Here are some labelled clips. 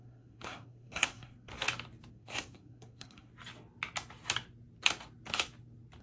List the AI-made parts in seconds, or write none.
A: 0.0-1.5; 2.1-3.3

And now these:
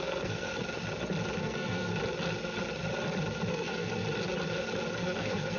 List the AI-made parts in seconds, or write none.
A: 0.0-0.5; 1.4-1.9; 3.5-4.0; 4.9-5.6

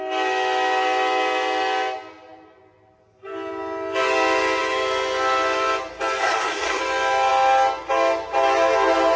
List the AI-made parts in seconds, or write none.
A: 6.2-6.8